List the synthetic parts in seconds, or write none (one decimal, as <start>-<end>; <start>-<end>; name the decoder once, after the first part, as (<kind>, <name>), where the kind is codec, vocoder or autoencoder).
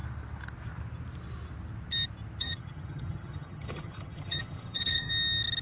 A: 2.4-5.1 (vocoder, HiFi-GAN)